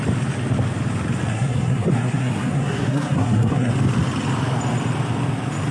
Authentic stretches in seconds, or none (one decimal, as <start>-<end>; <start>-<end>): 0.0-1.3; 3.7-5.7